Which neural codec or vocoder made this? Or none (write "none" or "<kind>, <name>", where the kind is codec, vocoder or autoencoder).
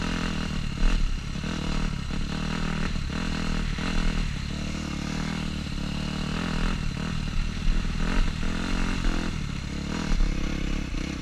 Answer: none